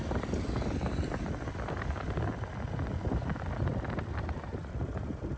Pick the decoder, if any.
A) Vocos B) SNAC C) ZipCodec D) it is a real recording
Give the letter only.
D